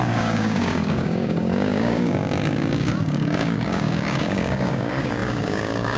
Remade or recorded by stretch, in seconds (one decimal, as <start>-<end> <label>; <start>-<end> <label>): 0.0-6.0 remade